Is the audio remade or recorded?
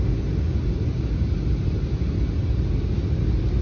recorded